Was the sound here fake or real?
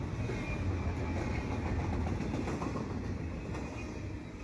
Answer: real